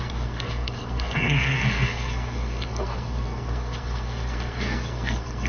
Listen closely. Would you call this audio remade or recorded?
remade